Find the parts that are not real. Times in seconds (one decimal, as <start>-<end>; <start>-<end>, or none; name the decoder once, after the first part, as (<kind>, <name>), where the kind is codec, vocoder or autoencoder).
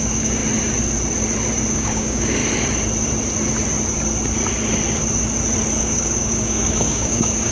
0.0-0.4 (codec, DAC); 1.7-2.4; 5.8-7.5